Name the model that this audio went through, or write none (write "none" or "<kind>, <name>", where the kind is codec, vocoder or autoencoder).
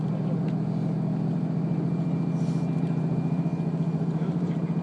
none